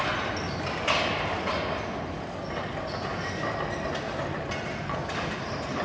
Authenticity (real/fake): real